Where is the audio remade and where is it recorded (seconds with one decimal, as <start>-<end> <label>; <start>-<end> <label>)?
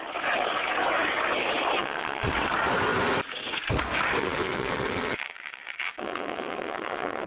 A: 0.0-1.8 recorded; 1.8-2.5 remade; 2.5-4.2 recorded; 4.2-7.3 remade